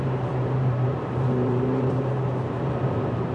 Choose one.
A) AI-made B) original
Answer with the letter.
A